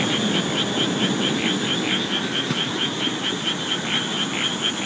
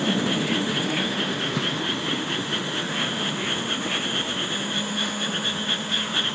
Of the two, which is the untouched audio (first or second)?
first